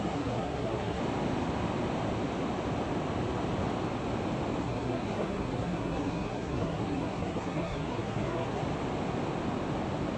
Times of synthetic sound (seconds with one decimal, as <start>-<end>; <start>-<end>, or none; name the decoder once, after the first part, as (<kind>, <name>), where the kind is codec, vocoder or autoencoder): 0.0-1.0 (codec, SNAC); 4.6-8.6